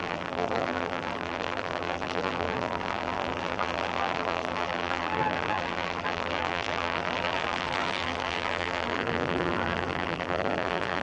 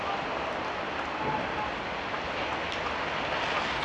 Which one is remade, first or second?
first